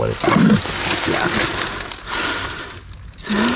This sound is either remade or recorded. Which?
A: recorded